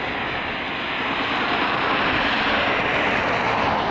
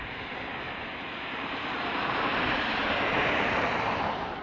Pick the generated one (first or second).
second